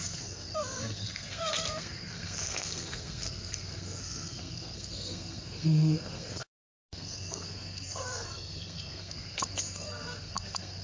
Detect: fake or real fake